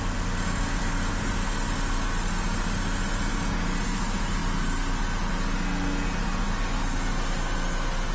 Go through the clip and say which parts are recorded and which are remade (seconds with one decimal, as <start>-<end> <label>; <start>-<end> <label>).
0.0-8.1 recorded